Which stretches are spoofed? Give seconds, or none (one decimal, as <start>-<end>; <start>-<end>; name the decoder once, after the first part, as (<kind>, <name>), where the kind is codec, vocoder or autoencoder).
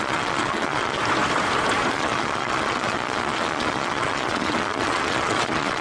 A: 0.0-1.0 (vocoder, Vocos); 1.9-5.8